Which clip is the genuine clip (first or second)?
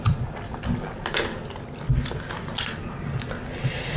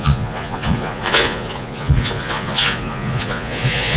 first